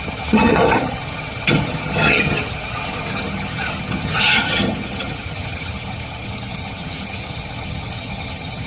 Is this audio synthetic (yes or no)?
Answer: yes